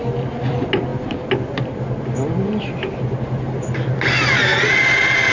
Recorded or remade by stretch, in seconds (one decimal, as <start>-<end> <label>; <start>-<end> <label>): 0.0-5.3 recorded